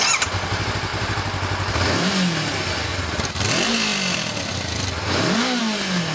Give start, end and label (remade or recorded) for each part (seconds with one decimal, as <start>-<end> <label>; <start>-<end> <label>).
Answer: 0.0-6.1 recorded